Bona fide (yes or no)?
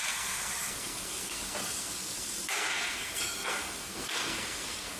no